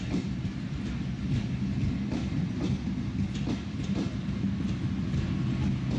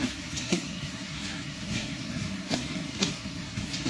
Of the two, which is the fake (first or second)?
second